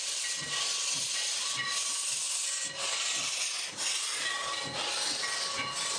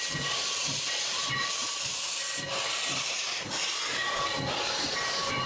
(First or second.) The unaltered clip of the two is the first